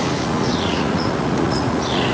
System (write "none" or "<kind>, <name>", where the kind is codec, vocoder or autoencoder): vocoder, Vocos